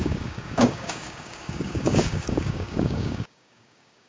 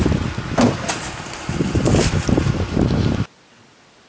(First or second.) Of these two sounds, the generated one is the first